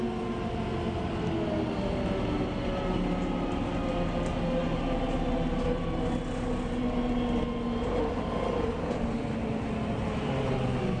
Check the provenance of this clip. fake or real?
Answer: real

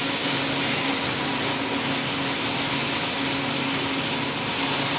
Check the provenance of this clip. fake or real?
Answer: real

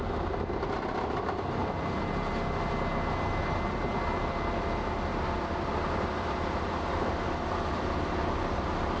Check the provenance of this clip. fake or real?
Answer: real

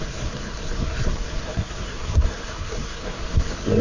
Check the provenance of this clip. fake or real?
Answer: fake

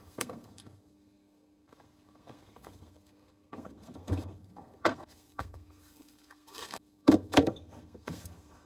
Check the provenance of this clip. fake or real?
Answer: fake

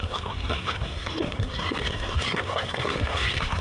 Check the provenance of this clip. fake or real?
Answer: fake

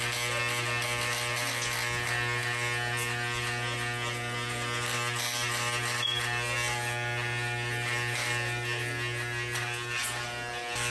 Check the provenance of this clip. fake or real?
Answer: real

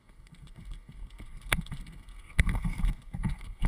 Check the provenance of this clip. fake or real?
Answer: fake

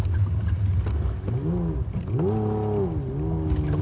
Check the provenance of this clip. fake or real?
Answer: real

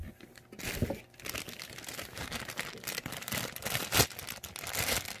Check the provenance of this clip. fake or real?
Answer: real